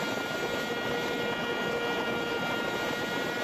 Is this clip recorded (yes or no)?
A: yes